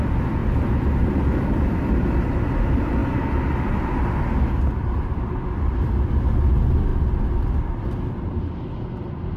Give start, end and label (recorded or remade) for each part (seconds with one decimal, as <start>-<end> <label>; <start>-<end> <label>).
0.0-9.4 recorded